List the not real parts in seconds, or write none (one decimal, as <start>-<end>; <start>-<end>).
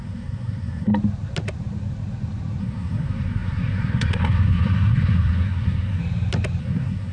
0.0-0.9; 2.6-6.0; 6.6-7.1